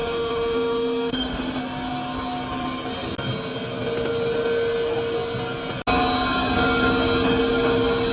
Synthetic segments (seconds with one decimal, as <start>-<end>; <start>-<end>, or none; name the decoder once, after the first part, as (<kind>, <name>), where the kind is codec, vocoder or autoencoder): 0.0-1.6 (autoencoder, DAC-VAE)